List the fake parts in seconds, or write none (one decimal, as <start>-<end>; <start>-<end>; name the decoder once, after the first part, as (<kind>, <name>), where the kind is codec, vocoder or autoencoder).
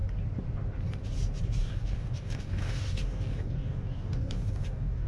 1.6-5.1 (codec, DAC)